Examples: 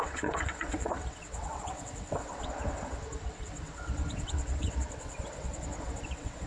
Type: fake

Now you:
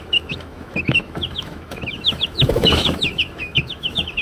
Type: fake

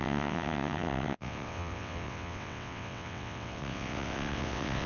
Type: fake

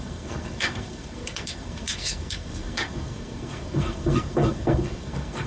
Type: fake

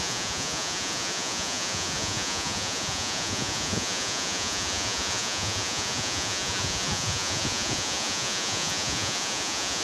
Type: fake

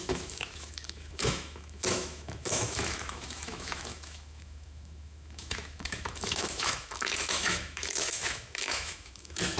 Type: fake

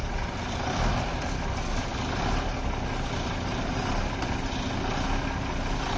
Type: real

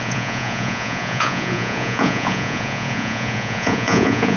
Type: fake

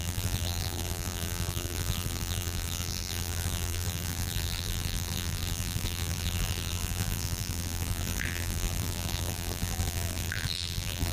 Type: fake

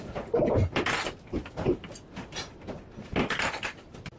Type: real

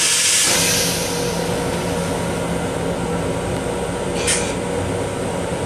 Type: real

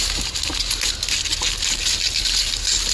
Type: real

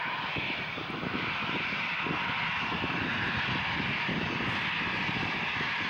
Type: real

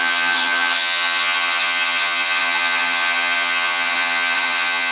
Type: fake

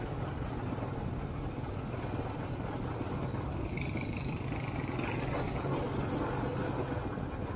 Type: real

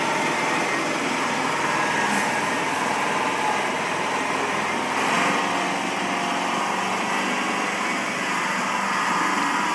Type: real